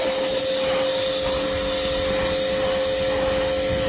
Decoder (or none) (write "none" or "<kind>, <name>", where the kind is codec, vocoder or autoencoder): none